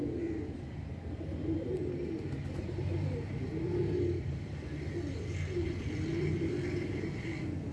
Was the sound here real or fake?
real